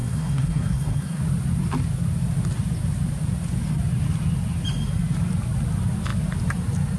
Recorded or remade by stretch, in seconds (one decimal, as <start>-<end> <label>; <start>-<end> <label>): 0.0-1.2 remade; 1.2-7.0 recorded